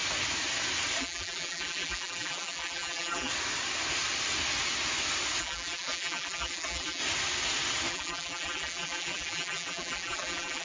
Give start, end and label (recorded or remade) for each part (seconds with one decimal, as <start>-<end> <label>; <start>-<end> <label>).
0.0-1.0 recorded; 1.0-3.3 remade; 3.3-5.4 recorded; 5.4-7.0 remade; 7.0-7.9 recorded; 7.9-10.6 remade

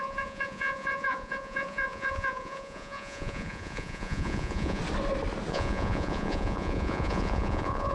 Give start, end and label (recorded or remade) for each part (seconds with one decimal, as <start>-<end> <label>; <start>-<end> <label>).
0.0-4.8 remade; 4.8-5.5 recorded; 5.5-7.9 remade